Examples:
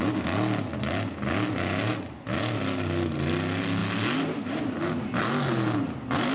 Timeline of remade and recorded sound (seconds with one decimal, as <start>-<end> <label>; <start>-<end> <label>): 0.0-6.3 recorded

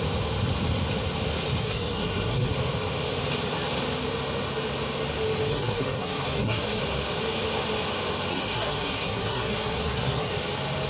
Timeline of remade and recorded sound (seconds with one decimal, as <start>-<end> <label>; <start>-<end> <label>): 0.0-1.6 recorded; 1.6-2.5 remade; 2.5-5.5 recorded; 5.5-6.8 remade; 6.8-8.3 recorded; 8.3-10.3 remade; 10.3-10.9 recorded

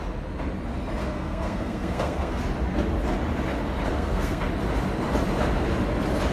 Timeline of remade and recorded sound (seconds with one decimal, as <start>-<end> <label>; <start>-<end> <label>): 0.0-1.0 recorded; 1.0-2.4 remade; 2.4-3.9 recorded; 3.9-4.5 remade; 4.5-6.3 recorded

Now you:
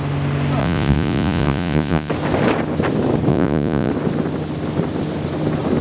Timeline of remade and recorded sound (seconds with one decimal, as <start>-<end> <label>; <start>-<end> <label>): 0.0-0.6 recorded; 0.6-2.1 remade; 2.1-3.3 recorded; 3.3-3.9 remade; 3.9-5.8 recorded

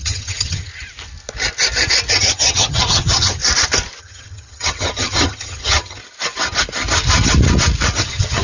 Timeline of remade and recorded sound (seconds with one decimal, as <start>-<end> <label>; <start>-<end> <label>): 0.0-0.7 remade; 0.7-2.1 recorded; 2.1-3.4 remade; 3.4-4.0 recorded; 4.0-6.0 remade; 6.0-8.0 recorded; 8.0-8.4 remade

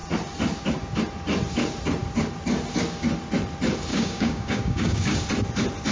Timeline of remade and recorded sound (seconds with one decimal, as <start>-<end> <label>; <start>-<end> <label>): 0.0-3.9 recorded; 3.9-5.2 remade; 5.2-5.9 recorded